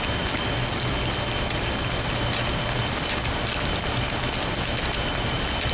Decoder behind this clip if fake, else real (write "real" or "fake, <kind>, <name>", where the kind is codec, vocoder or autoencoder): real